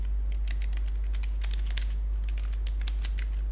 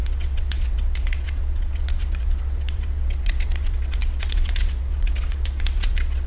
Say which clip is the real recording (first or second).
first